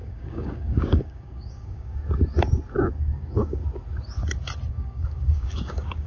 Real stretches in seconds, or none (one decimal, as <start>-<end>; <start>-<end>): 2.0-3.0; 3.6-4.7